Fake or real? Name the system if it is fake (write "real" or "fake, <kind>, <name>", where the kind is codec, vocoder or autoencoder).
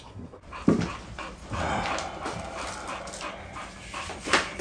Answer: real